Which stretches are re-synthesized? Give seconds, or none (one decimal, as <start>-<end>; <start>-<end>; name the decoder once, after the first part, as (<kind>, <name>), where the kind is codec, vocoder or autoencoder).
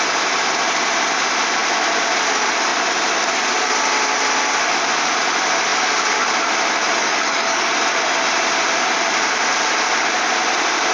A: 7.0-7.7 (codec, DAC)